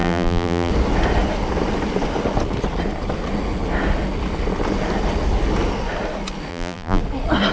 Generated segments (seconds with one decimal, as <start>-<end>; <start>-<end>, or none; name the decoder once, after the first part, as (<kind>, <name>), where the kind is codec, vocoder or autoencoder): 0.0-0.7 (vocoder, BigVGAN v2); 6.5-7.0